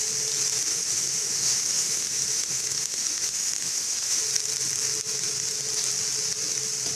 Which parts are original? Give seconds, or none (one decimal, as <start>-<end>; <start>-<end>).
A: 0.0-0.7; 4.2-7.0